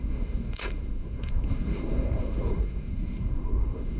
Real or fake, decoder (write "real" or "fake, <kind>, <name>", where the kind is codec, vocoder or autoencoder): fake, codec, SNAC